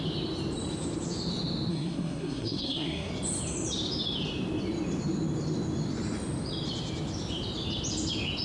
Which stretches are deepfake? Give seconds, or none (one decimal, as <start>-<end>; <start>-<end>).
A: 1.7-3.1